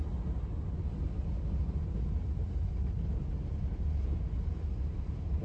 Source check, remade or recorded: recorded